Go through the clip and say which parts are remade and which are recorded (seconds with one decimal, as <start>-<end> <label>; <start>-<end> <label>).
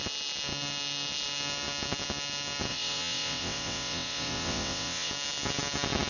0.0-2.7 recorded; 2.7-5.1 remade; 5.1-6.1 recorded